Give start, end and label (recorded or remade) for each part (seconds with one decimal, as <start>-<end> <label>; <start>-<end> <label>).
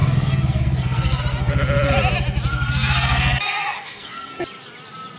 0.0-1.2 remade; 1.2-2.5 recorded; 2.5-4.4 remade; 4.4-5.2 recorded